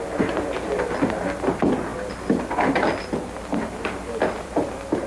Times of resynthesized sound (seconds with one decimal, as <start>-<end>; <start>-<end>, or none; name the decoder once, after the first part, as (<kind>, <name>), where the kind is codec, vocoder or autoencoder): none